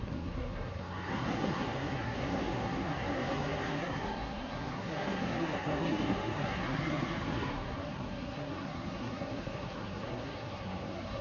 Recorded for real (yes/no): no